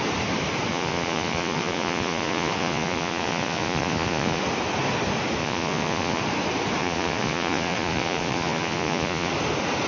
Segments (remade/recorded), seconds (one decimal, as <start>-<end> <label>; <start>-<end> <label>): 0.0-0.7 recorded; 0.7-4.4 remade; 4.4-5.4 recorded; 5.4-6.2 remade; 6.2-6.8 recorded; 6.8-9.3 remade; 9.3-9.9 recorded